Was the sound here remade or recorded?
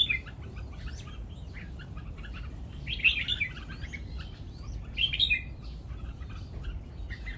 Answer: remade